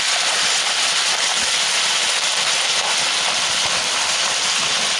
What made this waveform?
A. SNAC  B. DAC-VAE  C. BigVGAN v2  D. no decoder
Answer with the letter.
D